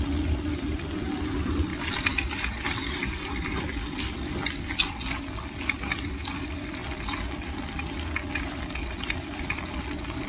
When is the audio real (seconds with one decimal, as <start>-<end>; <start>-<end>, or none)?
0.0-10.3